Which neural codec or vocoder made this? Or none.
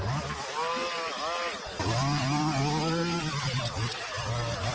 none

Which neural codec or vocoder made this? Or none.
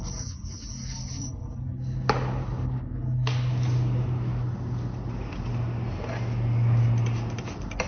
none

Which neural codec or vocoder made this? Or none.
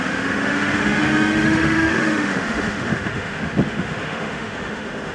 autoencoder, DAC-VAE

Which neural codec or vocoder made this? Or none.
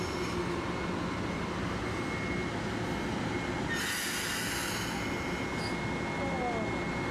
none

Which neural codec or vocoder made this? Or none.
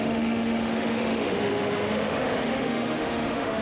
autoencoder, DAC-VAE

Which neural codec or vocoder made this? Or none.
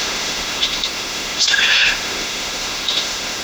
autoencoder, DAC-VAE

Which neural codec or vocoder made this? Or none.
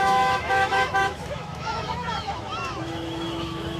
autoencoder, DAC-VAE